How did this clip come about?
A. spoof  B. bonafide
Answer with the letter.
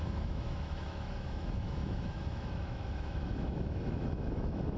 A